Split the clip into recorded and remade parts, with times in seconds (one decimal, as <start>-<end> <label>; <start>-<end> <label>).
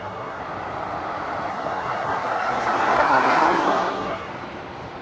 0.0-0.4 remade; 0.4-1.5 recorded; 1.5-4.3 remade; 4.3-5.0 recorded